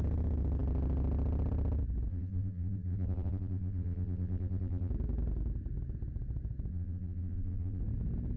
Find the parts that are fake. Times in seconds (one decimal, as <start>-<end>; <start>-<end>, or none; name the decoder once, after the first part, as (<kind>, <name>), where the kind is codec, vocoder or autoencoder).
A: 2.1-4.9 (vocoder, BigVGAN v2); 6.7-7.8